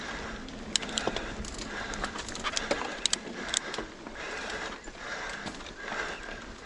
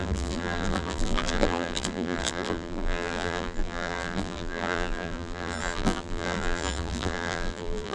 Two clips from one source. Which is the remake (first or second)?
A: second